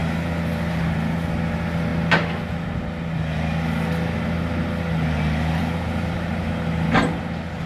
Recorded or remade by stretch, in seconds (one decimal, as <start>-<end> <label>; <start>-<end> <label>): 0.0-7.7 recorded